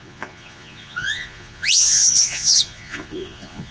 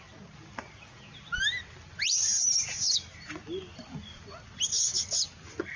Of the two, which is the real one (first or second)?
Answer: second